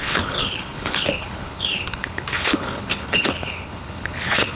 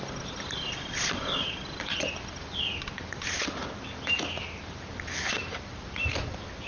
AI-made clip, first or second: first